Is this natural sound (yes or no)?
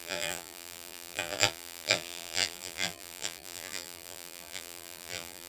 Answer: no